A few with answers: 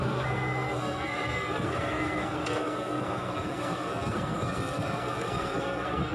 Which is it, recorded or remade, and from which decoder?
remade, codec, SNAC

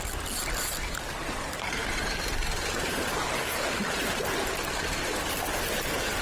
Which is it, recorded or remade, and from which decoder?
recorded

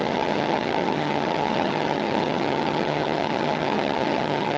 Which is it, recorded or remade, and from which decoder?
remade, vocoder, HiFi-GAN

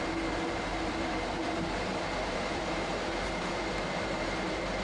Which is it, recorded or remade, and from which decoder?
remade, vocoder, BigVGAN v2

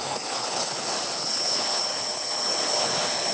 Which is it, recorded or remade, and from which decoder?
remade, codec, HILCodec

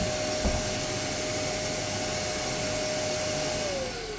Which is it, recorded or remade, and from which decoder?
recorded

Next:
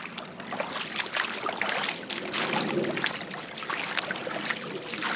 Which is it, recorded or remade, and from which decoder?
recorded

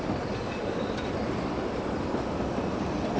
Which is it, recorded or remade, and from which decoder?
recorded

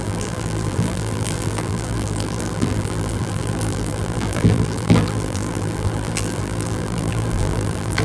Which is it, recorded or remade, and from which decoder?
remade, vocoder, BigVGAN v2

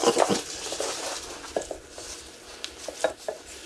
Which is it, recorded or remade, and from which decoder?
recorded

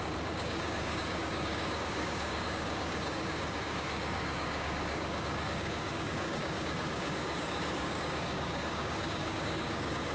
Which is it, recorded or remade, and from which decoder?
remade, codec, DAC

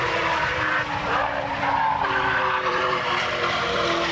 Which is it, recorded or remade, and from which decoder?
remade, vocoder, BigVGAN v2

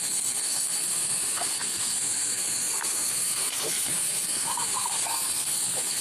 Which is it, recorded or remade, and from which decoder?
remade, codec, SNAC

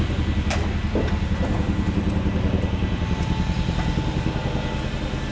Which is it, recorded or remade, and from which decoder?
recorded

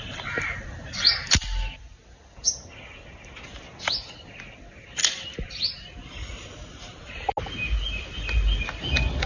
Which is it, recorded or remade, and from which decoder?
recorded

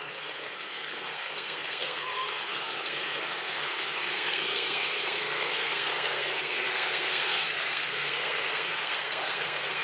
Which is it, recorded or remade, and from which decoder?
remade, codec, SNAC